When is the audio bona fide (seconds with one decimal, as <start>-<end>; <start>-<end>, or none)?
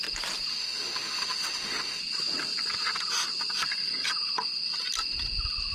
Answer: 0.0-0.5; 2.0-5.7